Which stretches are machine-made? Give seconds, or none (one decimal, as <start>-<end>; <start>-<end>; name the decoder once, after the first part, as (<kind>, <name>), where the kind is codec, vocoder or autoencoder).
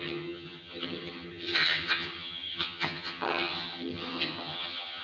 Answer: 0.0-5.0 (vocoder, HiFi-GAN)